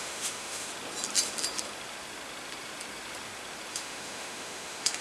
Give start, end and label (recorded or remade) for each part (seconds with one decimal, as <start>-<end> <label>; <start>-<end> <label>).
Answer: 0.0-0.7 remade; 0.7-3.7 recorded; 3.7-5.0 remade

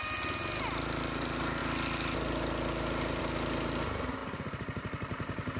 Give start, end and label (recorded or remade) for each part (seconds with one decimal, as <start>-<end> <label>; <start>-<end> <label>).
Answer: 0.0-5.6 recorded

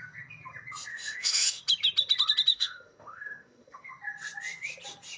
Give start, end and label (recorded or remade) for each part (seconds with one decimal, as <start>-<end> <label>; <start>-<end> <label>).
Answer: 0.0-0.9 recorded; 0.9-1.6 remade; 1.6-2.5 recorded; 2.5-3.9 remade; 3.9-5.2 recorded

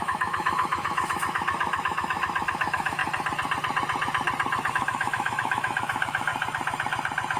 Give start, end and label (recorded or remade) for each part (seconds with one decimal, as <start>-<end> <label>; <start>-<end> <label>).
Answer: 0.0-3.0 remade; 3.0-4.7 recorded; 4.7-6.3 remade; 6.3-7.4 recorded

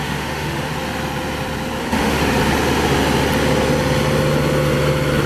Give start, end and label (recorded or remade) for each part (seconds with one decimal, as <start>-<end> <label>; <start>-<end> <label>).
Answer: 0.0-0.7 remade; 0.7-1.8 recorded; 1.8-2.2 remade; 2.2-5.3 recorded